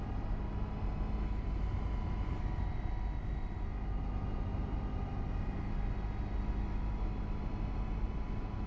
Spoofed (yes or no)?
no